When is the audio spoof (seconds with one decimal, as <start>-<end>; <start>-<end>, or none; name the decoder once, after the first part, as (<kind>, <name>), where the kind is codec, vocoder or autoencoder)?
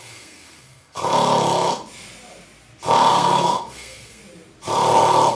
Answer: 0.0-1.0 (codec, SNAC); 3.1-4.2